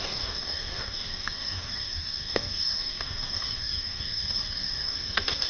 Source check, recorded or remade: remade